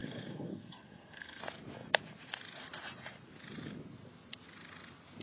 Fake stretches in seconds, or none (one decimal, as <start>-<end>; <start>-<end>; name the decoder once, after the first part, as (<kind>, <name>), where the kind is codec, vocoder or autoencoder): 0.0-1.4 (codec, SNAC)